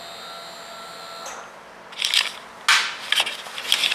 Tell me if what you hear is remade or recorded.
recorded